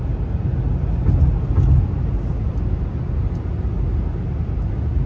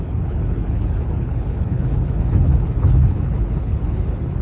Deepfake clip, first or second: second